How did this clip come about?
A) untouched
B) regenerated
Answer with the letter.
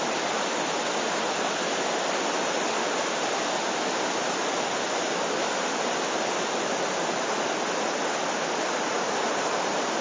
A